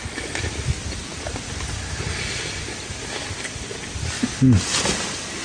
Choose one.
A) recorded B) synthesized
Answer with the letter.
A